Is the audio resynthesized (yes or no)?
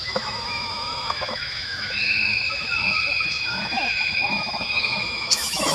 yes